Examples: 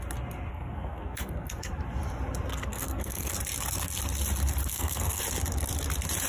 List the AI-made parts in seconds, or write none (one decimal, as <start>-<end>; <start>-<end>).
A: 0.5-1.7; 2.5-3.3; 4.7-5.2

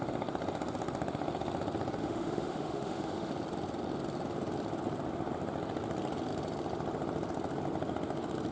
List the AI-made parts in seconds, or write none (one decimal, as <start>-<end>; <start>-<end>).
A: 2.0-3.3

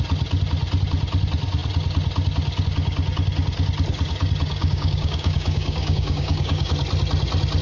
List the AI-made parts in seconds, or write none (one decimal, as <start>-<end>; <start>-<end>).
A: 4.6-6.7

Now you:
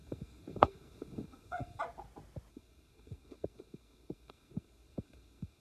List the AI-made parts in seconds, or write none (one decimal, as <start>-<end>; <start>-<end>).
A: 0.0-1.8; 2.5-5.6